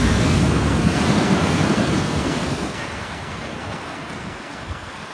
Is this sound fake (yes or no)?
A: yes